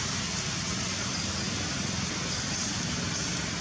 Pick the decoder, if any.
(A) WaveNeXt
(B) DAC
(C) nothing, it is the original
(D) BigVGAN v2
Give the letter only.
C